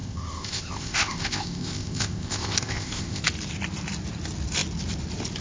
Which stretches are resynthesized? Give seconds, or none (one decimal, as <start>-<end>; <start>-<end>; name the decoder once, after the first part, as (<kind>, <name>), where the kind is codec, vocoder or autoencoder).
0.0-3.2 (codec, ZipCodec)